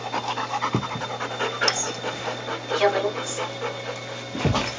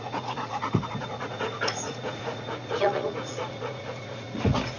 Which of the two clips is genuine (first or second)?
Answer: first